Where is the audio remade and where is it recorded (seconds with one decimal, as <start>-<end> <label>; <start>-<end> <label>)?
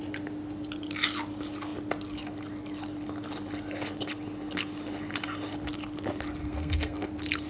0.0-6.4 recorded; 6.4-7.1 remade; 7.1-7.5 recorded